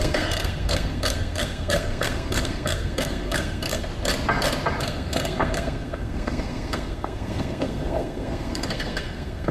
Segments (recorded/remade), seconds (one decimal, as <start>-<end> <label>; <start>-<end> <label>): 0.0-3.9 remade; 3.9-4.8 recorded; 4.8-9.5 remade